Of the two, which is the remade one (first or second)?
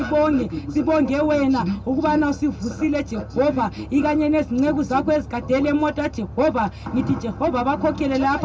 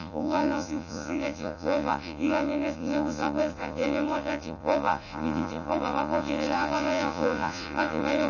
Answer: second